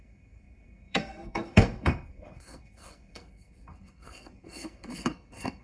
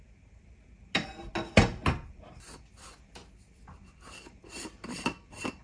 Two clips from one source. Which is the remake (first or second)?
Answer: first